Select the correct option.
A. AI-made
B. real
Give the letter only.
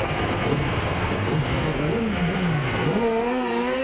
A